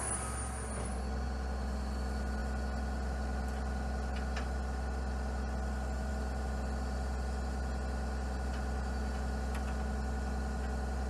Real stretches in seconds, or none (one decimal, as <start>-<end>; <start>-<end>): 0.0-11.1